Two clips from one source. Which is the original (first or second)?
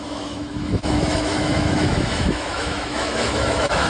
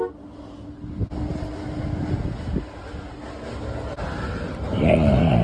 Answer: second